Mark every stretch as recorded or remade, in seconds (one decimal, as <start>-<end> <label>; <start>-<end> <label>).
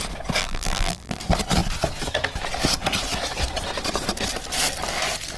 0.0-0.4 recorded; 0.4-1.2 remade; 1.2-5.4 recorded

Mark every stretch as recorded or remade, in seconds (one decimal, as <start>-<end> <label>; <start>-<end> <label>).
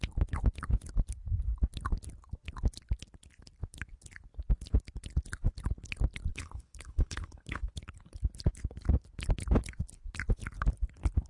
0.0-6.3 recorded; 6.3-7.7 remade; 7.7-11.3 recorded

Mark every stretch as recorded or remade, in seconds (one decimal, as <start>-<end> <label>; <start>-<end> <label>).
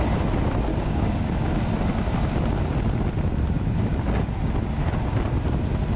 0.0-0.7 recorded; 0.7-1.5 remade; 1.5-6.0 recorded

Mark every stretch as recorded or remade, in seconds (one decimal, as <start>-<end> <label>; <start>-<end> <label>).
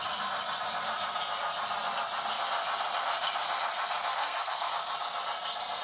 0.0-4.2 recorded; 4.2-4.7 remade; 4.7-5.8 recorded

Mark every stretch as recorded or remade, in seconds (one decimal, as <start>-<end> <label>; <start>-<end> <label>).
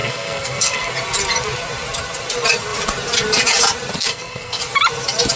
0.0-0.9 remade; 0.9-4.1 recorded; 4.1-4.6 remade; 4.6-5.4 recorded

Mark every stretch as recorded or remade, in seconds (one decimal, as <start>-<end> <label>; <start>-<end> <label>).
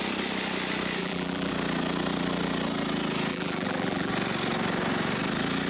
0.0-1.0 recorded; 1.0-1.5 remade; 1.5-3.3 recorded; 3.3-4.1 remade; 4.1-5.7 recorded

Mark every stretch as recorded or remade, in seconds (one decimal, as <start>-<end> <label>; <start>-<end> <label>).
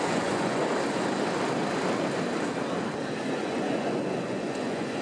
0.0-0.6 remade; 0.6-3.2 recorded; 3.2-5.0 remade